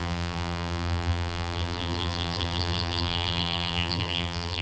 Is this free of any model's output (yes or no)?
no